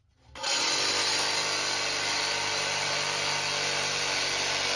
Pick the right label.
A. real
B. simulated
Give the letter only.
A